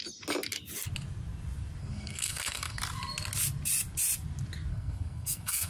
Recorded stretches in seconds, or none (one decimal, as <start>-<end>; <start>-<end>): 0.0-1.8; 2.8-4.7